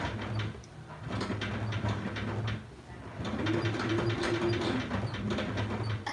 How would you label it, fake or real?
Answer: real